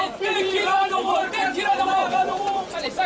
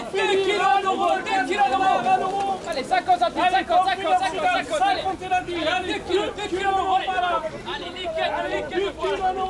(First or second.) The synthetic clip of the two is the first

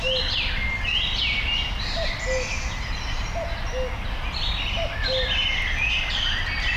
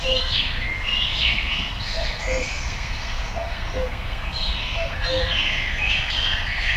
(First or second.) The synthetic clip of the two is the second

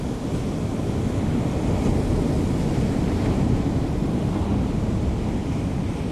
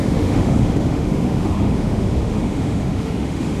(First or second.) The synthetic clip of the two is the second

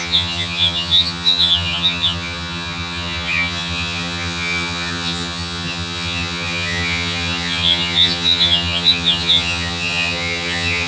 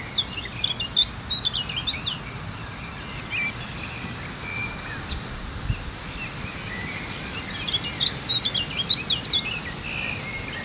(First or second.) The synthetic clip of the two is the first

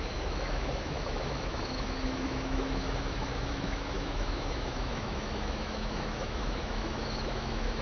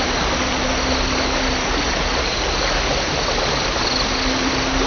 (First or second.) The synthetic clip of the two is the first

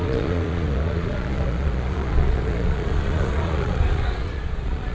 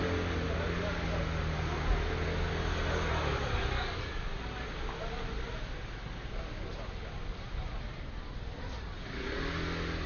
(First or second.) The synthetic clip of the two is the first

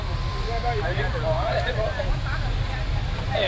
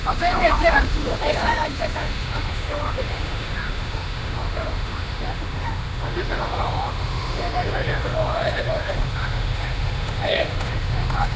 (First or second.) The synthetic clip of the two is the second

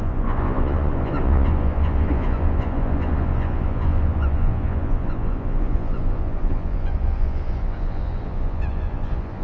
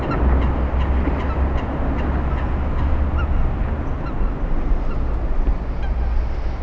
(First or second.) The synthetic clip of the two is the first